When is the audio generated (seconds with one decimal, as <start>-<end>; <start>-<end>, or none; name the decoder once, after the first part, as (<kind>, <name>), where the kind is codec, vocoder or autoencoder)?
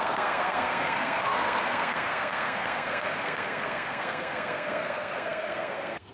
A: 0.0-6.1 (codec, SNAC)